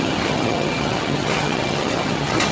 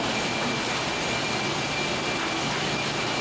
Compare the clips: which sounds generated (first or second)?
first